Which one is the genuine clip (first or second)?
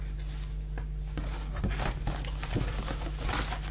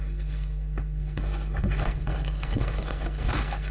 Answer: first